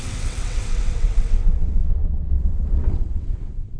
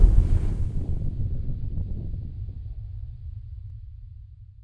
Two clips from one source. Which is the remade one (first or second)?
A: first